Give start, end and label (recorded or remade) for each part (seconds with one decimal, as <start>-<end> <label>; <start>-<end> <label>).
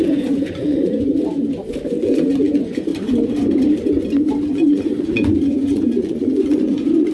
0.0-1.1 remade; 1.1-2.0 recorded; 2.0-2.9 remade; 2.9-4.5 recorded; 4.5-7.1 remade